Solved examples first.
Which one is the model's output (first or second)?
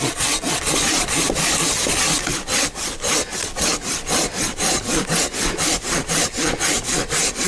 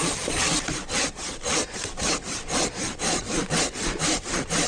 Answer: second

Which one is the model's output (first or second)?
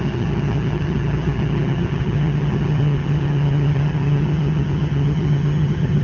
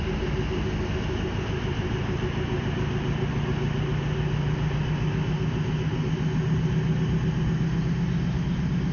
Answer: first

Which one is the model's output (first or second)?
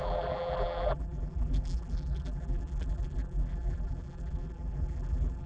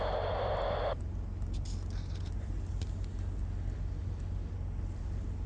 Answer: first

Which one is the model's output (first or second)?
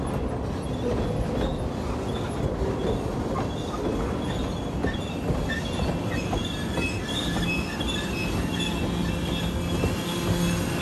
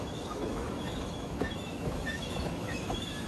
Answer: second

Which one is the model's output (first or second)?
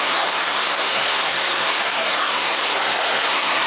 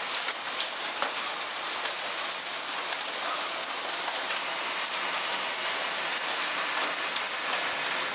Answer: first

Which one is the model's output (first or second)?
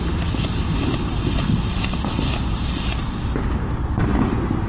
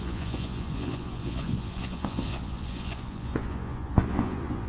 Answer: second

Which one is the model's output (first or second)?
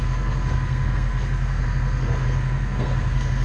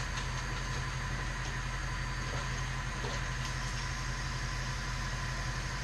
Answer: first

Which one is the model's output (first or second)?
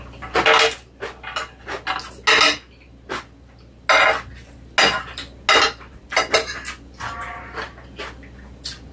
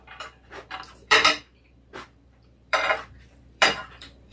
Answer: second